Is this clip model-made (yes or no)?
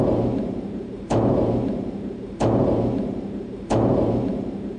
yes